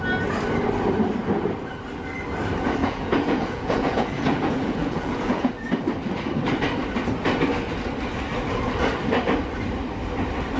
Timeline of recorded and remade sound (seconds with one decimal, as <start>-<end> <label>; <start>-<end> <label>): 0.0-2.8 recorded; 2.8-5.5 remade; 5.5-10.6 recorded